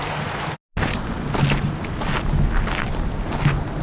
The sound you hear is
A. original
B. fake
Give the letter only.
A